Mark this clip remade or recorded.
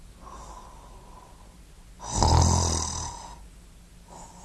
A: recorded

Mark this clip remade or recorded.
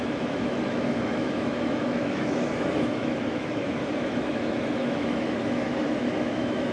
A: remade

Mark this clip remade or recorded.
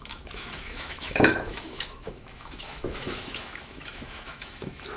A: remade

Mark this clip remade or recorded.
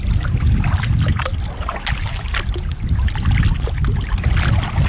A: recorded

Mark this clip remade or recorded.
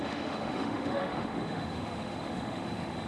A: remade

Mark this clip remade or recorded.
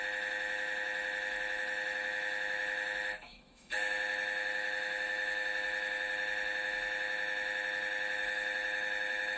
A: remade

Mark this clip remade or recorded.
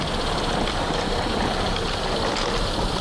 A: recorded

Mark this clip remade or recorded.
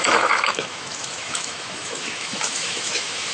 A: remade